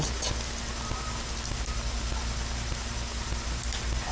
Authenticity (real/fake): real